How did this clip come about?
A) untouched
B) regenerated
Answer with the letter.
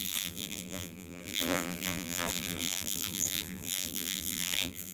B